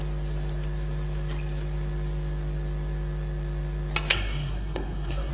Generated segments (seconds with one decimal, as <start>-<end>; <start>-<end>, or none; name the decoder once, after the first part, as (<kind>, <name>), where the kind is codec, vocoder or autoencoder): 4.1-5.3 (codec, SNAC)